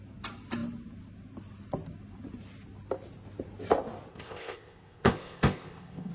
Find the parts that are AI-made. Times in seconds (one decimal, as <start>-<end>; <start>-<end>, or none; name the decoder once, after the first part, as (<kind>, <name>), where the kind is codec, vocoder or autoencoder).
4.1-6.1 (codec, ZipCodec)

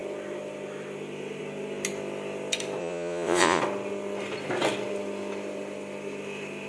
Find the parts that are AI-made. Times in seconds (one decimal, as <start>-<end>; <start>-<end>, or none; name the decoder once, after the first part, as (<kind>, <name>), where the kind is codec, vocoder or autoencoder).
2.8-3.6 (vocoder, Vocos)

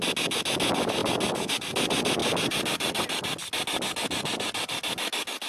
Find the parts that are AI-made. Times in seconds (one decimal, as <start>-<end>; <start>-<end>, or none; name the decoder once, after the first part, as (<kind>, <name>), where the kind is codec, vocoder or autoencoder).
none

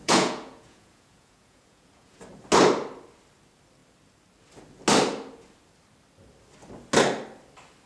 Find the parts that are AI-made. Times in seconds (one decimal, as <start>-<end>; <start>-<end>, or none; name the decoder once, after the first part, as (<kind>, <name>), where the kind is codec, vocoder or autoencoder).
0.0-2.2 (vocoder, Vocos)

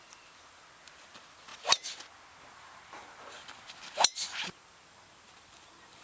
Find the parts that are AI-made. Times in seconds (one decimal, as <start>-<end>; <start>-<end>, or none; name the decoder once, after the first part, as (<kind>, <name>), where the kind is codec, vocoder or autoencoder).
none

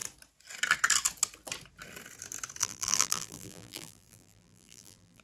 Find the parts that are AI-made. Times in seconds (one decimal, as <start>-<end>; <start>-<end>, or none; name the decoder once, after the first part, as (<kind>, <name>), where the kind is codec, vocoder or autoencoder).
2.6-5.2 (vocoder, BigVGAN v2)